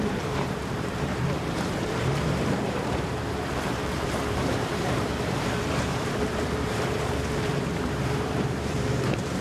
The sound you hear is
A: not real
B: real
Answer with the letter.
A